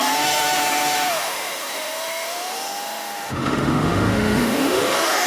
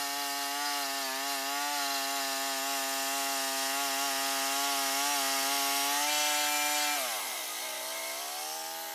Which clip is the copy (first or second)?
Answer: first